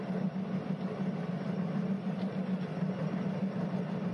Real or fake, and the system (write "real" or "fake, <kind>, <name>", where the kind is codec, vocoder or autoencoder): real